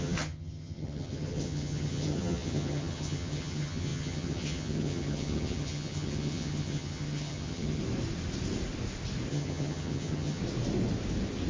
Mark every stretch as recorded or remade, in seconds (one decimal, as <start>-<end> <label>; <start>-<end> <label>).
0.0-7.8 remade; 7.8-9.3 recorded; 9.3-10.4 remade; 10.4-11.5 recorded